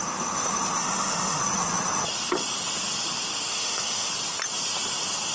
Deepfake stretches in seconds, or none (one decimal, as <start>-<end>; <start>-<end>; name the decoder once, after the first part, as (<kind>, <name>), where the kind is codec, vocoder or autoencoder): 0.8-1.4 (autoencoder, DAC-VAE); 3.5-4.1